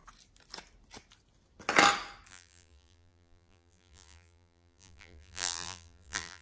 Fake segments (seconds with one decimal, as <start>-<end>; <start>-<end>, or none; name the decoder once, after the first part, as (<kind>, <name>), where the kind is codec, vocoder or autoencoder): 2.3-6.4 (vocoder, BigVGAN v2)